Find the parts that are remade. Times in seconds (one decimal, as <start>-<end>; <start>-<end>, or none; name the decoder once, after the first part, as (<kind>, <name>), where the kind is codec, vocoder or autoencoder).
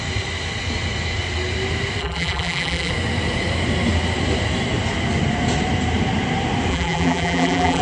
2.0-2.9 (vocoder, BigVGAN v2); 6.7-7.8